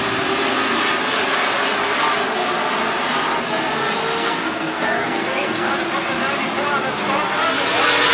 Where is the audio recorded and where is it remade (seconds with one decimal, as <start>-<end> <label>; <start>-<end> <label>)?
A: 0.0-4.2 recorded; 4.2-5.7 remade; 5.7-8.1 recorded